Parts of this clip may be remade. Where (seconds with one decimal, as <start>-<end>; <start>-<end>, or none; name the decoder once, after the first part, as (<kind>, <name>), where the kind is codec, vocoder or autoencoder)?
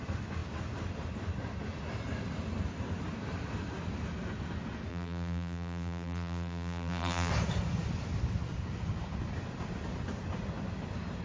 4.9-7.3 (vocoder, BigVGAN v2)